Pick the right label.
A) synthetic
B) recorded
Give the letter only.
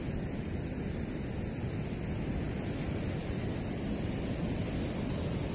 B